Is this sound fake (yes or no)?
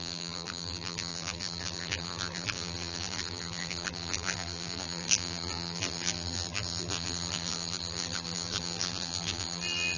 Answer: yes